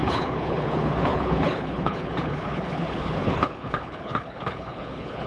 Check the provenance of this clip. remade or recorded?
remade